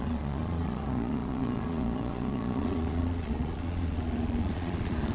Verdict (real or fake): fake